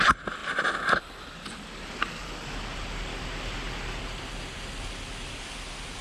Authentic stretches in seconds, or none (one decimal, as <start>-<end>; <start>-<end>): 0.0-6.0